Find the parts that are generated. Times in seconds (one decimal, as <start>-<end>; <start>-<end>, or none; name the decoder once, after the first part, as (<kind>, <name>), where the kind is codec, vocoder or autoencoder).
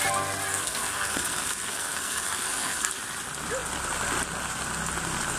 0.5-2.9 (codec, SNAC)